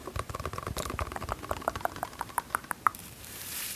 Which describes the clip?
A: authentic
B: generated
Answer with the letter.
B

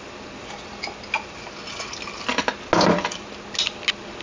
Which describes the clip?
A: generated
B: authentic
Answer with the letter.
B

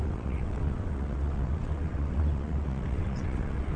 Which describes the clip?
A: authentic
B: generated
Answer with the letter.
B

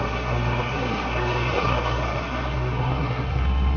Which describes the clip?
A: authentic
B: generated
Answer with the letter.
B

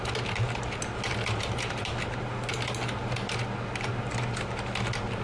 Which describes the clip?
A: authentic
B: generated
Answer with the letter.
A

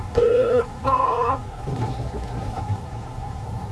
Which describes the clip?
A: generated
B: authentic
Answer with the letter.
A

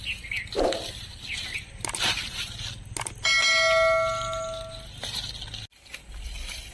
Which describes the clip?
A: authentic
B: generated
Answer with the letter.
A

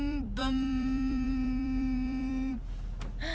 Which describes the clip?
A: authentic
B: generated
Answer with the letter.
B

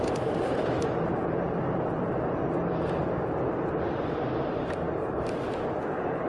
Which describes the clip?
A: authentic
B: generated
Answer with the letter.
B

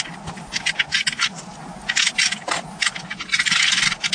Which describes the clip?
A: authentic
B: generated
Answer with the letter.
A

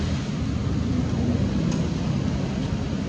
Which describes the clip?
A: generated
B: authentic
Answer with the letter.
B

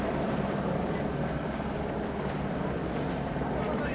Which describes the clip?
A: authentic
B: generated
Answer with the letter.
A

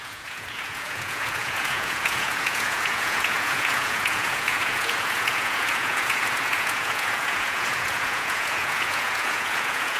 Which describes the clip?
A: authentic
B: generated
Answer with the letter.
B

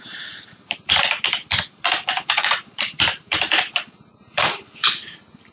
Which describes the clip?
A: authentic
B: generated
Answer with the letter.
B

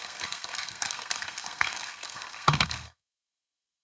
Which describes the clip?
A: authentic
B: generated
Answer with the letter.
B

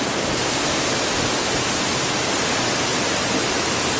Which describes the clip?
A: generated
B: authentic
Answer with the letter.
B